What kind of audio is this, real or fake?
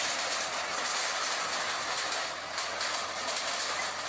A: real